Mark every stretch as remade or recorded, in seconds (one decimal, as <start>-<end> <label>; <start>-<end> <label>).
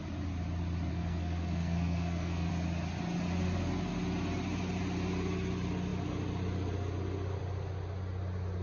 0.0-0.9 recorded; 0.9-2.5 remade; 2.5-8.6 recorded